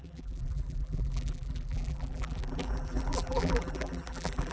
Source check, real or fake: fake